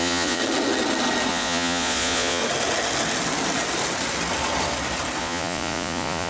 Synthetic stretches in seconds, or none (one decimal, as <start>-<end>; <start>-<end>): 0.0-0.4; 1.3-2.4; 5.2-6.3